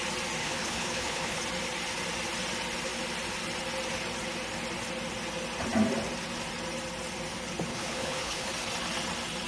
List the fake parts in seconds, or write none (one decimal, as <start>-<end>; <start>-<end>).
0.4-1.4; 7.7-8.5

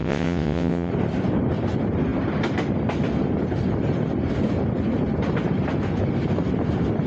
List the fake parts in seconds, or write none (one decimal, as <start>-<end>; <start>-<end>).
0.0-0.9

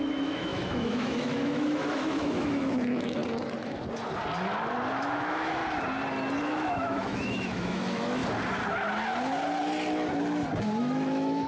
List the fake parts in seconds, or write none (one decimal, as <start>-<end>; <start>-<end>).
0.0-3.2; 5.0-5.6; 6.4-8.2; 10.8-11.5

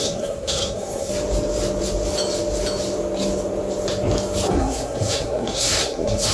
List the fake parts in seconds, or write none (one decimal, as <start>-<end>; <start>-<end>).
0.0-1.1; 4.5-6.3

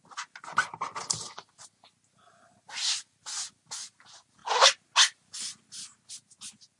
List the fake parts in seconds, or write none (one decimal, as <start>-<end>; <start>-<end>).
none

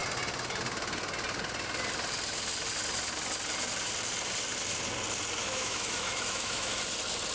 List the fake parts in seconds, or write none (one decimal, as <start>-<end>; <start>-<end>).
5.4-6.8